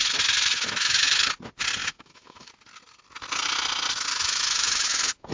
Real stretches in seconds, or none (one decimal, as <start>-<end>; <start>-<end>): 0.0-0.5; 1.3-1.8; 2.5-4.1